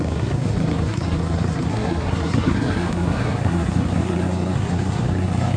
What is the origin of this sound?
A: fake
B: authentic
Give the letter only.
A